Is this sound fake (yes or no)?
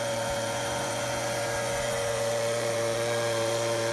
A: yes